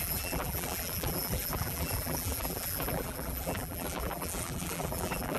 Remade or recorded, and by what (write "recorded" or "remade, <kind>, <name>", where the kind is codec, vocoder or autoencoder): remade, vocoder, BigVGAN v2